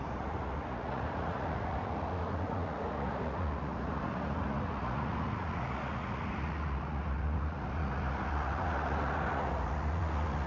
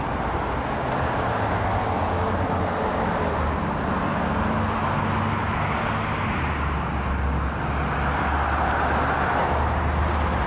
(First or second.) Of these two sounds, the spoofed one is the first